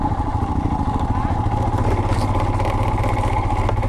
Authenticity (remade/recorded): recorded